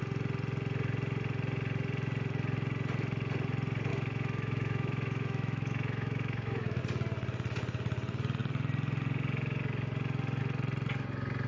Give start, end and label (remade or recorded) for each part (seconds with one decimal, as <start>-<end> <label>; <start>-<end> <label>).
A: 0.0-3.9 recorded; 3.9-6.8 remade; 6.8-11.5 recorded

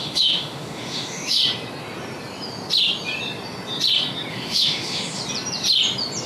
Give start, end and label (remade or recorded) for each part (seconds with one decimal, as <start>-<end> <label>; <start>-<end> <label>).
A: 0.0-1.4 remade; 1.4-4.3 recorded; 4.3-5.2 remade; 5.2-6.3 recorded

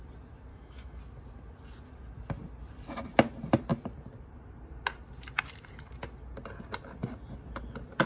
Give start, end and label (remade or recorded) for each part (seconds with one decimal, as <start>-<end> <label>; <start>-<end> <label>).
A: 0.0-0.5 recorded; 0.5-1.0 remade; 1.0-8.1 recorded

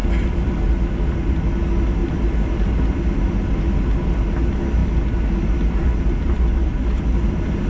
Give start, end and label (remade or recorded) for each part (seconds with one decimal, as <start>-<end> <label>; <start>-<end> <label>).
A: 0.0-7.7 recorded